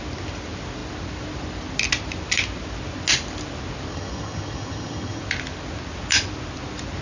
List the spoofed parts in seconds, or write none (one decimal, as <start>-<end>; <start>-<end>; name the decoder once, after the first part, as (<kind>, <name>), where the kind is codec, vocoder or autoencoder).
3.9-5.2 (vocoder, HiFi-GAN)